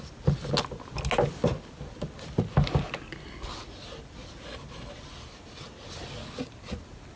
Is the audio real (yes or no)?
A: yes